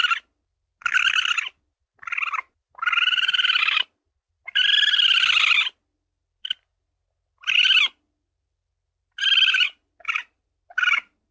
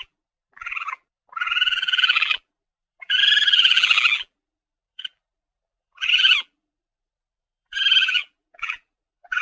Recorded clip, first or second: first